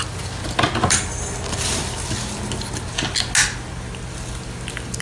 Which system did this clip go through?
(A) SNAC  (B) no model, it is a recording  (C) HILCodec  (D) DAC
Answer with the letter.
B